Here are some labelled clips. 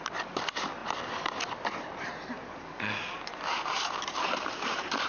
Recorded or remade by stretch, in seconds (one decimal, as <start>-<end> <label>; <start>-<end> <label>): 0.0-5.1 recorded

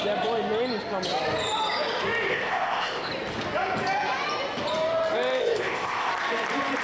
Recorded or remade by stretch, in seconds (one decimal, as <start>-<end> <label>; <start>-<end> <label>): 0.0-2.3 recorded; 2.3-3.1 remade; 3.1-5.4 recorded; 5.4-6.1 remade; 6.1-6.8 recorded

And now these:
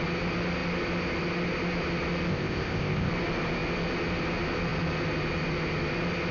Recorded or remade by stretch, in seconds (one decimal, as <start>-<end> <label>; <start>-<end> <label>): 0.0-2.3 recorded; 2.3-3.1 remade; 3.1-6.3 recorded

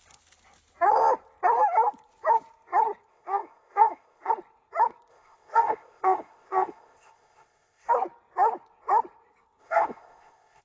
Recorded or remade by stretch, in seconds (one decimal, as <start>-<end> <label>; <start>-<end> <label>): 0.0-3.1 recorded; 3.1-4.3 remade; 4.3-5.1 recorded; 5.1-7.9 remade; 7.9-9.6 recorded; 9.6-10.6 remade